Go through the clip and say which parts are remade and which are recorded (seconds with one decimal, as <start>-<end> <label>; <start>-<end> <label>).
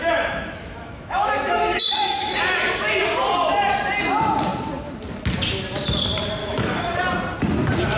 0.0-2.3 remade; 2.3-6.4 recorded; 6.4-7.0 remade; 7.0-8.0 recorded